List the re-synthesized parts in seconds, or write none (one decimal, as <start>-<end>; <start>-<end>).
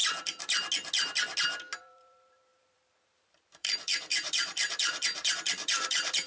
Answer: 1.8-6.3